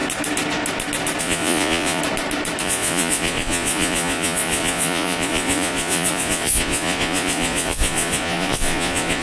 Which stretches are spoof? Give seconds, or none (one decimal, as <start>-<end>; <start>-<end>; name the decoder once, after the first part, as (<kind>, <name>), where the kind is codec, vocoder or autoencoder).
1.2-2.0 (vocoder, Vocos); 2.6-9.2